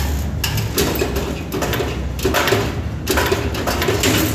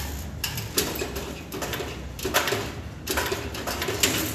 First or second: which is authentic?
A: first